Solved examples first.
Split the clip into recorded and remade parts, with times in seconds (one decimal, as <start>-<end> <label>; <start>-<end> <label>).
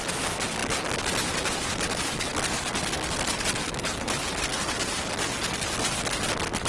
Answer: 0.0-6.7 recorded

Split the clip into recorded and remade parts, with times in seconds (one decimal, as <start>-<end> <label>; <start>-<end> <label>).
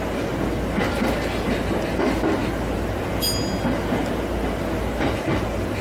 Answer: 0.0-5.8 recorded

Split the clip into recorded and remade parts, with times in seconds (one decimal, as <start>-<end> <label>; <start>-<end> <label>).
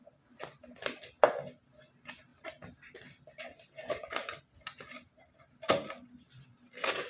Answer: 0.0-3.5 recorded; 3.5-4.4 remade; 4.4-7.1 recorded